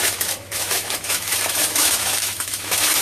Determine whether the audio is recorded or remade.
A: remade